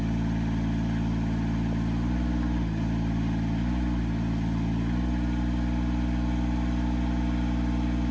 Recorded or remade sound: recorded